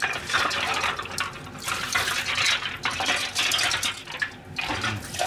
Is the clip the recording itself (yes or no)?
yes